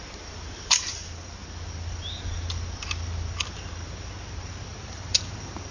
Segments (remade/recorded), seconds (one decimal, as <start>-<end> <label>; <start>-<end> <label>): 0.0-1.4 remade; 1.4-4.8 recorded; 4.8-5.7 remade